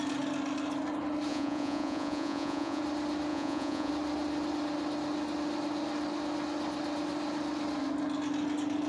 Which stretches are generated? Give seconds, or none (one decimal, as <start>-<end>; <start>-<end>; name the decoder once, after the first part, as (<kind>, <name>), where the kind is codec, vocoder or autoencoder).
1.3-2.8 (vocoder, Vocos); 3.3-3.9